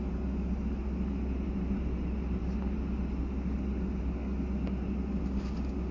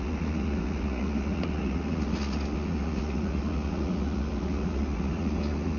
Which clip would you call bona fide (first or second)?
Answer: first